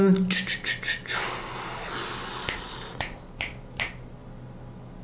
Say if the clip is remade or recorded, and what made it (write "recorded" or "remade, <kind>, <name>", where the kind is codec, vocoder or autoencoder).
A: recorded